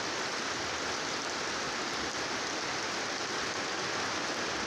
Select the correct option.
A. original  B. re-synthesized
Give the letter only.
A